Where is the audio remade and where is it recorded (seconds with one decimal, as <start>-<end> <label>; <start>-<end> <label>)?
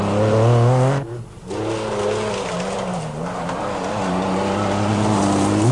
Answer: 0.0-5.7 recorded